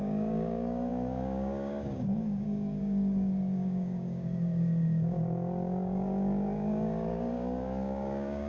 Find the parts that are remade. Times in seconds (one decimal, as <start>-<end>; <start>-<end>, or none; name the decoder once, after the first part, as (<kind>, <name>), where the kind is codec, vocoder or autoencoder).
0.0-8.5 (codec, DAC)